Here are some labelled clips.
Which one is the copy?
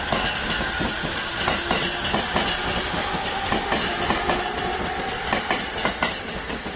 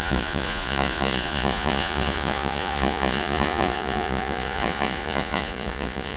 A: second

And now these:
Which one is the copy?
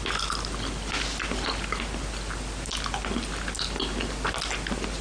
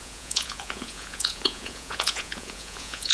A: second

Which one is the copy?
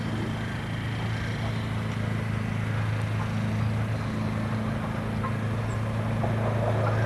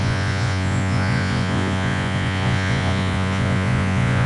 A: second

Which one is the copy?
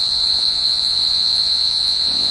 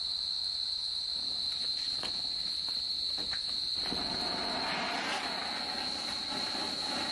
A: first